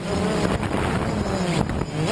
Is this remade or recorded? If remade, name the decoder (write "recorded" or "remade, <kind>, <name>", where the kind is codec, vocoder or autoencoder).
recorded